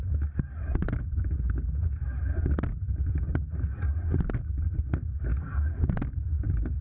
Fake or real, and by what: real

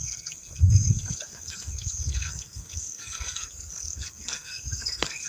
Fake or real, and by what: fake, codec, SNAC